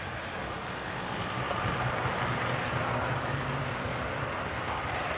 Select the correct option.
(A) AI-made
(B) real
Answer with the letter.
B